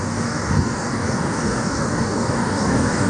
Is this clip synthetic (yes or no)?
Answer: yes